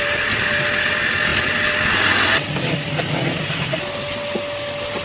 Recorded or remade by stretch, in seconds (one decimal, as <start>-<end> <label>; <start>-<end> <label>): 0.0-5.0 recorded